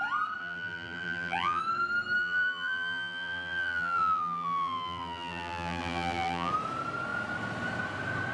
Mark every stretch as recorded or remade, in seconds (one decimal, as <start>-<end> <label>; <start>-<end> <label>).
0.0-0.4 recorded; 0.4-1.6 remade; 1.6-2.2 recorded; 2.2-6.5 remade; 6.5-8.3 recorded